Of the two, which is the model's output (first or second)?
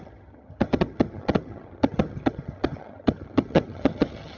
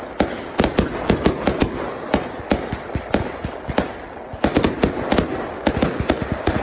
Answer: first